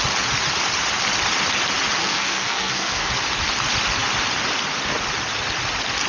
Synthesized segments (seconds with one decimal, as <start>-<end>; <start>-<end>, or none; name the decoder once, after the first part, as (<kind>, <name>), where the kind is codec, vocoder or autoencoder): 2.0-3.1 (codec, SNAC)